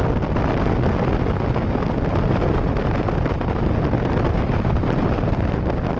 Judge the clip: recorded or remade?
recorded